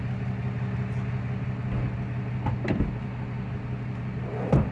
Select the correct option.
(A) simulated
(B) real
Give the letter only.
B